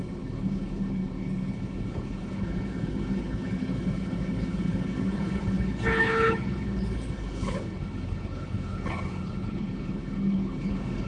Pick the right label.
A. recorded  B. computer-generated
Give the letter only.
B